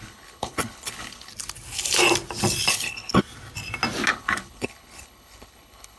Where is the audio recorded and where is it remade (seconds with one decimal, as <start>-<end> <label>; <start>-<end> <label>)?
0.0-1.3 remade; 1.3-2.7 recorded; 2.7-3.2 remade; 3.2-4.1 recorded; 4.1-6.0 remade